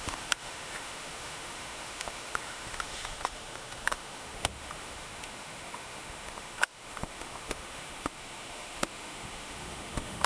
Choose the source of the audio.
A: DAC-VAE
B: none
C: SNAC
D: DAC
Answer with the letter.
A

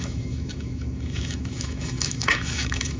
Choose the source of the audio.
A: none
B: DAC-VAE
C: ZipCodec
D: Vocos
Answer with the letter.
B